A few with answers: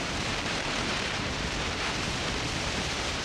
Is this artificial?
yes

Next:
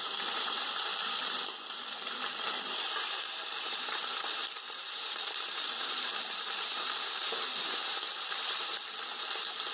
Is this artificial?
yes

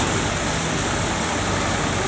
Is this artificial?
no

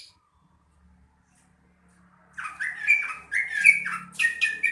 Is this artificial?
no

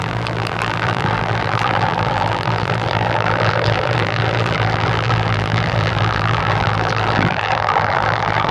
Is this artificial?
yes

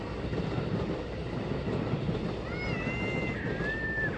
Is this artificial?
no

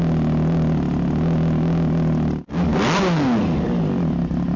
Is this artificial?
no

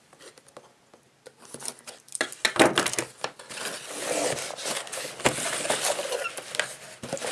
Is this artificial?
no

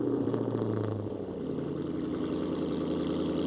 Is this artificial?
yes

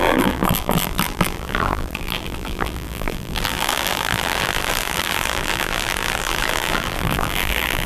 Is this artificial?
yes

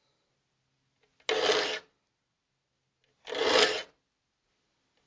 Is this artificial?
no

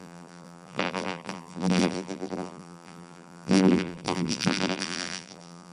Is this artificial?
yes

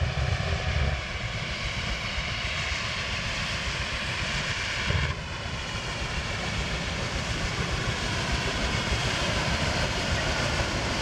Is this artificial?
yes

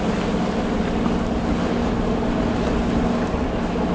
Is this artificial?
no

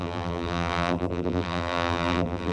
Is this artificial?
yes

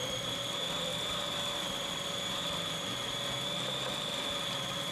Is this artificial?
no